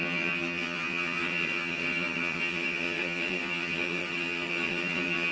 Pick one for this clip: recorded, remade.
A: remade